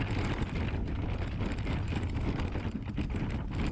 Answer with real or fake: real